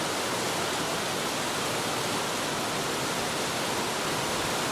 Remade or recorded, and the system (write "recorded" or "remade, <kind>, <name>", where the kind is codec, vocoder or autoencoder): recorded